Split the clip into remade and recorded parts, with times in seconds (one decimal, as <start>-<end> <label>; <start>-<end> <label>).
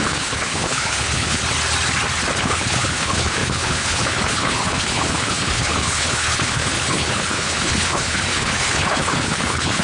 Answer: 0.0-1.4 remade; 1.4-2.4 recorded; 2.4-9.8 remade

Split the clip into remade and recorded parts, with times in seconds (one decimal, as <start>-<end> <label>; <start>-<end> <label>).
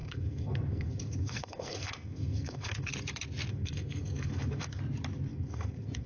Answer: 0.0-2.9 remade; 2.9-3.5 recorded; 3.5-4.8 remade; 4.8-5.3 recorded; 5.3-6.1 remade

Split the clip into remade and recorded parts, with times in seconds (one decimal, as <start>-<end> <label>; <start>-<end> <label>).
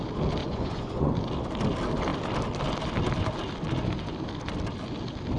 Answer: 0.0-0.4 recorded; 0.4-1.1 remade; 1.1-5.4 recorded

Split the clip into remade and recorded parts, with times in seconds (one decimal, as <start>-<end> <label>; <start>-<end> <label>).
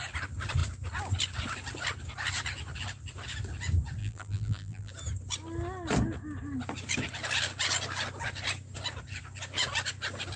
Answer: 0.0-4.0 recorded; 4.0-4.9 remade; 4.9-10.4 recorded